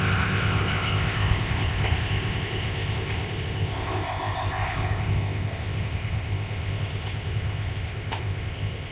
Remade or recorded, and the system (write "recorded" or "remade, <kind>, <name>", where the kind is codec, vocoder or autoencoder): remade, codec, ZipCodec